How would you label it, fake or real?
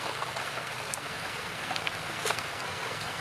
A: fake